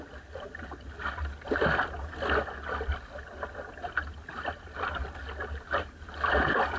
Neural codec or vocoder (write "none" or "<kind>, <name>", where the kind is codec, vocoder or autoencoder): none